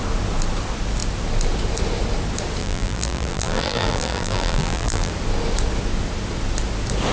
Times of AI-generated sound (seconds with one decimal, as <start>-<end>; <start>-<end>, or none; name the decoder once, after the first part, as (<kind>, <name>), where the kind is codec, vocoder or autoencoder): 2.6-5.1 (vocoder, BigVGAN v2)